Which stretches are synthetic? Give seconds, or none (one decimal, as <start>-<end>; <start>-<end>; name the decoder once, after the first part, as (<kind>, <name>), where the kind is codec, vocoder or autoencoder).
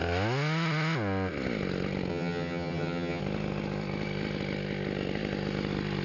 2.1-3.2 (vocoder, HiFi-GAN)